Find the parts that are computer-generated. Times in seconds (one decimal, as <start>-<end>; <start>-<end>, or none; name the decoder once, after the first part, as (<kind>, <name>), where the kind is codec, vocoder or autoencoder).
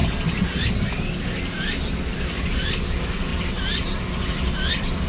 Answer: 2.1-2.6 (vocoder, BigVGAN v2); 3.3-4.0